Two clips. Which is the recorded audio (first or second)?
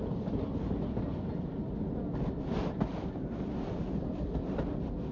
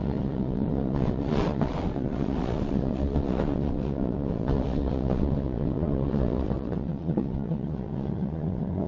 first